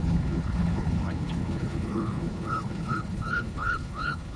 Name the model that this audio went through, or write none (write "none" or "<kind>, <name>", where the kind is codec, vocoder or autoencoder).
codec, HILCodec